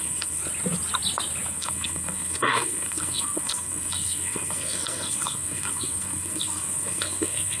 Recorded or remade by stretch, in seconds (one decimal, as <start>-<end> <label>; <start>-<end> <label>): 0.0-0.4 remade; 0.4-1.5 recorded; 1.5-7.6 remade